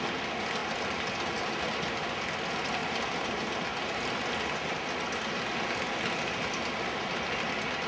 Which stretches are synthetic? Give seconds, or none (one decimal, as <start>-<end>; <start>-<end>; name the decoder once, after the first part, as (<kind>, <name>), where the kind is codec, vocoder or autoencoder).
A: none